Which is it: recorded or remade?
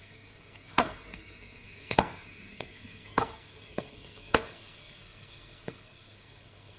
remade